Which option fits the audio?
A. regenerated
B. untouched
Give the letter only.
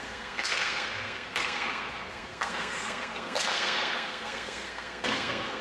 A